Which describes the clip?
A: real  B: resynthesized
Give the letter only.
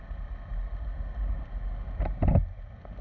A